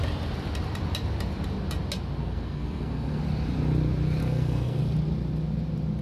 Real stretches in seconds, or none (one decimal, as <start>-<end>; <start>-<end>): 0.0-2.2; 3.2-4.2; 4.8-6.0